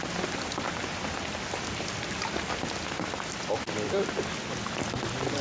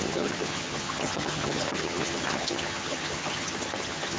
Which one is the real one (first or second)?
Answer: first